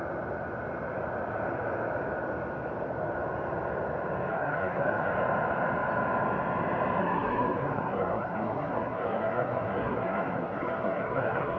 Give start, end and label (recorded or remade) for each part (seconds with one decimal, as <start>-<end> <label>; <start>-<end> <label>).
0.0-4.3 recorded; 4.3-5.1 remade; 5.1-7.0 recorded; 7.0-11.6 remade